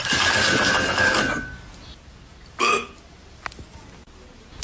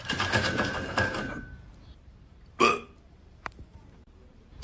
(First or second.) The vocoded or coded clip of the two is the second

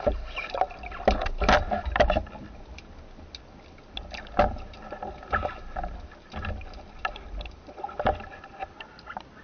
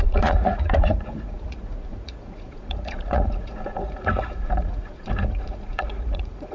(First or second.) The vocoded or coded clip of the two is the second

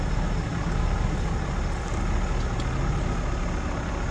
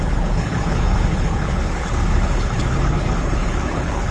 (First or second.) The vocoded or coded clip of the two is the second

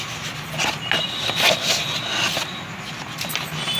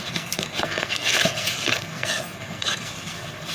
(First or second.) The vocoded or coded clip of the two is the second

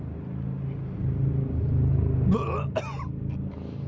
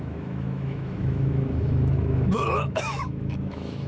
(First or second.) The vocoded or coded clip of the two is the second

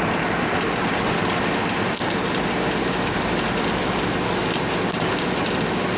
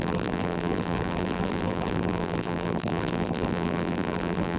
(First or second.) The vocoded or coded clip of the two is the second